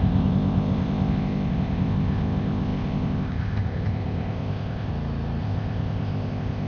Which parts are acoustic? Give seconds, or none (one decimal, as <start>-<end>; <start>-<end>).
4.9-5.4